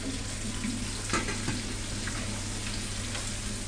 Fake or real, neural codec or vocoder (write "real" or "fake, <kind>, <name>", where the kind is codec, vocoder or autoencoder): real